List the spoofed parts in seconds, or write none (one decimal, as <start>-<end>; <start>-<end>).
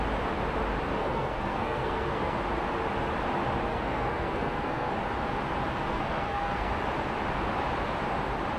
1.0-2.4; 3.7-4.9; 5.8-6.7